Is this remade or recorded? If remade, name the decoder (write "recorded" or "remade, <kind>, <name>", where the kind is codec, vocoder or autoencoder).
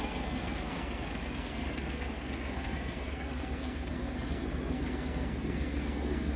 remade, codec, SNAC